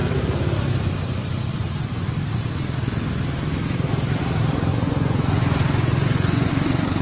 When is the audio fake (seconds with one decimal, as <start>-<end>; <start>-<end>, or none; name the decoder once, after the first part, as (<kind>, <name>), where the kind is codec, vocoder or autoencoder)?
4.7-6.5 (vocoder, Vocos)